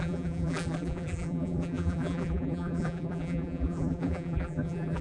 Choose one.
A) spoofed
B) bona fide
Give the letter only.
A